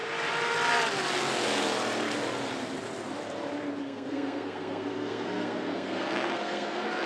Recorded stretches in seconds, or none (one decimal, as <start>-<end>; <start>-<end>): 0.0-3.8